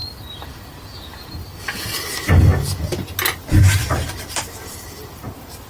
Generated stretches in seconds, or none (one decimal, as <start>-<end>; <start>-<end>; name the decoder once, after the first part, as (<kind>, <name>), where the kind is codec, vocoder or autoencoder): 0.0-1.3 (vocoder, BigVGAN v2); 3.4-4.9